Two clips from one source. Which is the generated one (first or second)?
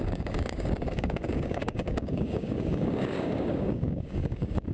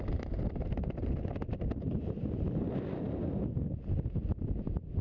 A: first